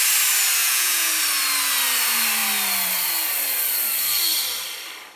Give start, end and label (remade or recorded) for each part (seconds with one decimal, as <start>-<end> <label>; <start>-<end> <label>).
0.0-0.6 recorded; 0.6-1.1 remade; 1.1-5.2 recorded